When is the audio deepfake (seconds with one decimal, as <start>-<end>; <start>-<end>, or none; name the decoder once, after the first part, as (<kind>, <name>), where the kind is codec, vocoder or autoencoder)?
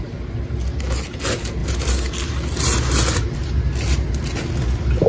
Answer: none